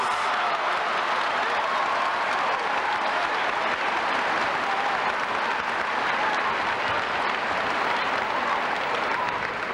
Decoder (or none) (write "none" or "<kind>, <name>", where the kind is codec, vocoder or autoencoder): none